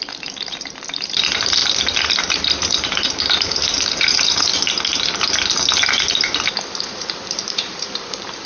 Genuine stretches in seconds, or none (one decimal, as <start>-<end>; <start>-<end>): 1.6-2.3; 4.5-6.8